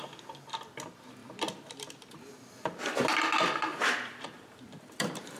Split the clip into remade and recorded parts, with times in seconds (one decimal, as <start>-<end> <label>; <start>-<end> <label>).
0.0-1.2 recorded; 1.2-2.5 remade; 2.5-3.7 recorded; 3.7-5.4 remade